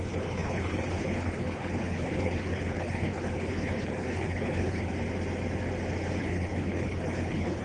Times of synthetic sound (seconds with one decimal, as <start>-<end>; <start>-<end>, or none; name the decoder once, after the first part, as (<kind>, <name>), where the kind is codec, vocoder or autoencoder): 0.0-4.9 (codec, HILCodec); 6.2-7.6